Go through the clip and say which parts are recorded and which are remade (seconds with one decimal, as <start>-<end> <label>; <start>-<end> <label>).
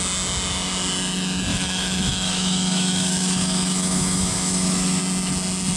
0.0-1.5 recorded; 1.5-5.0 remade; 5.0-5.8 recorded